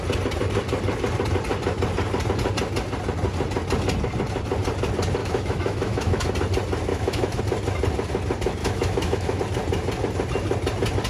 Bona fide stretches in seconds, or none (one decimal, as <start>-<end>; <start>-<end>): 0.0-5.2; 6.3-6.9; 7.4-8.6; 9.4-11.1